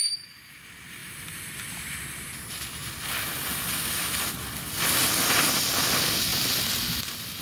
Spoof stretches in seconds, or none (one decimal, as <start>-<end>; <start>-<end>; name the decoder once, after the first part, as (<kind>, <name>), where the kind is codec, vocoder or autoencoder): 0.0-2.8 (vocoder, BigVGAN v2); 5.0-6.3